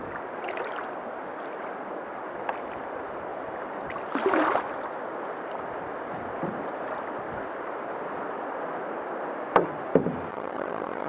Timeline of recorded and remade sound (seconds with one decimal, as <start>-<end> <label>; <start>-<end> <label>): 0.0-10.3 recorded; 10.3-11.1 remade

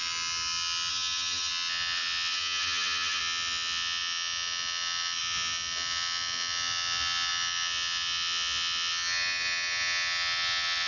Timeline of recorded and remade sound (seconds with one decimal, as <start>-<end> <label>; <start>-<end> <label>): 0.0-0.9 recorded; 0.9-1.5 remade; 1.5-2.3 recorded; 2.3-3.2 remade; 3.2-10.9 recorded

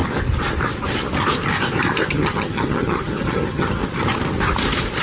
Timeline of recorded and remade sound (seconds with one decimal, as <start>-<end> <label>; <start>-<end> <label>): 0.0-2.1 recorded; 2.1-3.8 remade; 3.8-5.0 recorded

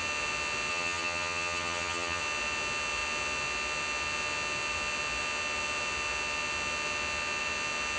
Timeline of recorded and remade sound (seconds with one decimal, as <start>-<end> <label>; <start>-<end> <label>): 0.0-0.7 recorded; 0.7-2.2 remade; 2.2-8.0 recorded

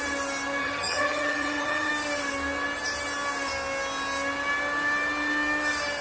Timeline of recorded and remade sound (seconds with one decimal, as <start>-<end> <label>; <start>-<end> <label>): 0.0-0.6 recorded; 0.6-1.9 remade; 1.9-6.0 recorded

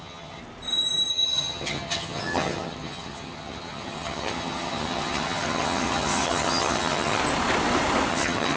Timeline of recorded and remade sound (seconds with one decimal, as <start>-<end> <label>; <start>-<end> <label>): 0.0-0.4 remade; 0.4-1.1 recorded; 1.1-7.2 remade; 7.2-8.1 recorded; 8.1-8.6 remade

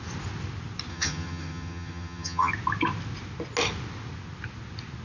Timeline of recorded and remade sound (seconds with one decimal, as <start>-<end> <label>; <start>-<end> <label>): 0.0-0.9 recorded; 0.9-2.5 remade; 2.5-5.0 recorded

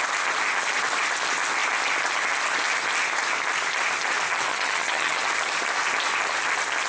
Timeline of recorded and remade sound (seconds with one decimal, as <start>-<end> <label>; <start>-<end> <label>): 0.0-4.5 recorded; 4.5-5.3 remade; 5.3-6.9 recorded